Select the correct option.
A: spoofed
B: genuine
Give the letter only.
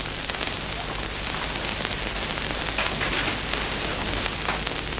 B